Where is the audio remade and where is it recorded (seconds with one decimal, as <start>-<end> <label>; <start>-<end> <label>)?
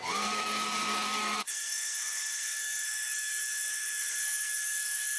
0.0-5.2 remade